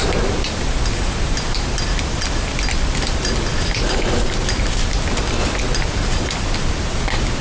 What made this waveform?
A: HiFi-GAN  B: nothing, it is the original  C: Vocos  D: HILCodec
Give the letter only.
B